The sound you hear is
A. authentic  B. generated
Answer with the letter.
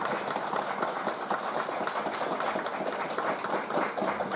A